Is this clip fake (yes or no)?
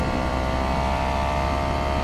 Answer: yes